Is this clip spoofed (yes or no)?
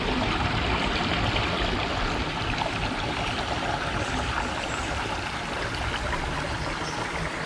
no